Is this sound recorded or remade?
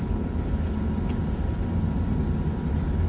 recorded